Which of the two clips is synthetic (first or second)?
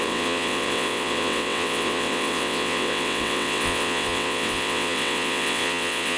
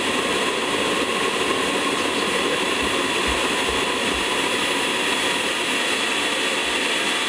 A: first